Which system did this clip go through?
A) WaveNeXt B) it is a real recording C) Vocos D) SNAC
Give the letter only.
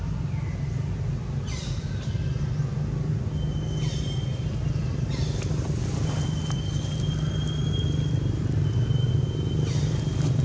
B